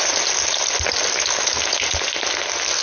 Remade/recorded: recorded